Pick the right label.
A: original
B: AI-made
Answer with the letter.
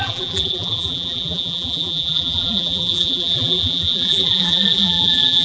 B